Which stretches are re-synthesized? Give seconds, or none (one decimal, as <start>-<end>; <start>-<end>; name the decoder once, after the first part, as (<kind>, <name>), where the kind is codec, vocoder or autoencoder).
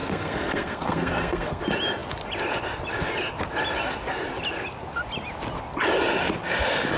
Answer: 0.0-1.6 (codec, SNAC)